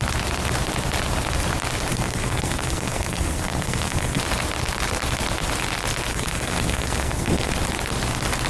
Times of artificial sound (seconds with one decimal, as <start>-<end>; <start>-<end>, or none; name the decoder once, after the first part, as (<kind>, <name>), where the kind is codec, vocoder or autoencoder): 1.9-4.2 (codec, SNAC); 6.1-7.5